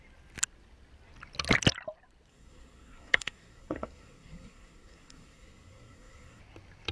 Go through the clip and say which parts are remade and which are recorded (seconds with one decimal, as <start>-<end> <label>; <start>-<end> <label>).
0.0-2.3 recorded; 2.3-6.4 remade; 6.4-6.9 recorded